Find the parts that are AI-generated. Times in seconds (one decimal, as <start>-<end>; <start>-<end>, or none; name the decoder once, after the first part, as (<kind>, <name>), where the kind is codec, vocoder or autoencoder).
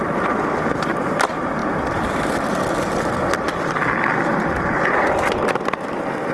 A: none